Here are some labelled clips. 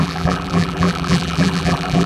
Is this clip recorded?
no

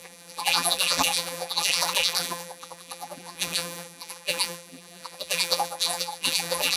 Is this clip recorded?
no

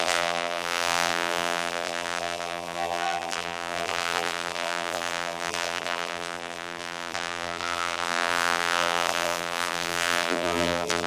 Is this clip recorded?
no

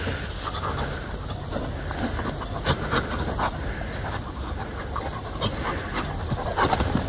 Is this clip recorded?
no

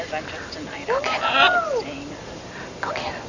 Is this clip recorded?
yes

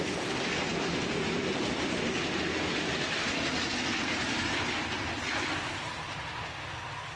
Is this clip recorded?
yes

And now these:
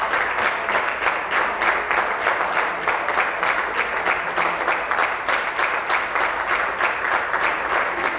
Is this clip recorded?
yes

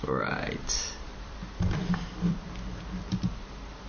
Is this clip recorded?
no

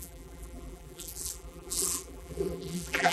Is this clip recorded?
no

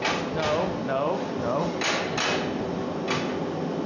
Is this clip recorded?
yes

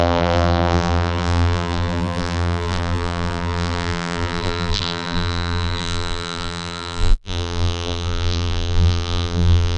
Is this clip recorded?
no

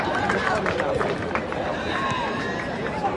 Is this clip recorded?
no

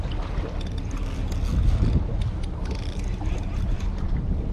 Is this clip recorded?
yes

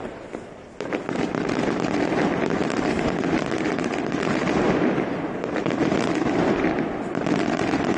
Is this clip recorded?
no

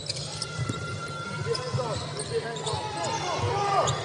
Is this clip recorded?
no